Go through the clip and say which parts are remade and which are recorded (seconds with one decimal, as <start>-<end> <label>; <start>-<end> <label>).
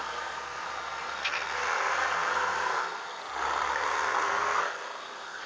0.0-3.2 remade; 3.2-3.7 recorded; 3.7-5.5 remade